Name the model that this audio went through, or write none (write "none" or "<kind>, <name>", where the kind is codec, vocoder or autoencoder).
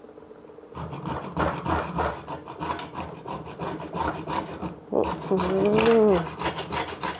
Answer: none